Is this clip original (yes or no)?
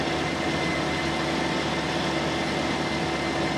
yes